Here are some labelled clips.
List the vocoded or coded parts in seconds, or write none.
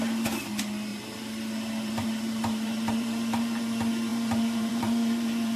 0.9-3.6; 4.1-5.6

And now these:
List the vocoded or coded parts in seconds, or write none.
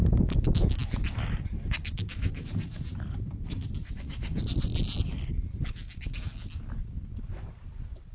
0.0-4.7; 7.1-8.1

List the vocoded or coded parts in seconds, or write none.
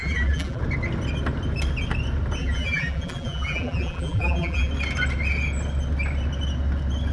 0.0-0.6; 2.4-4.7